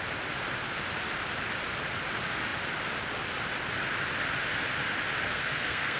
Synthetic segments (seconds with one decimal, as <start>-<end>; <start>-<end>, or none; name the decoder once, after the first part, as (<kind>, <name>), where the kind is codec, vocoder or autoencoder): 5.2-6.0 (codec, SNAC)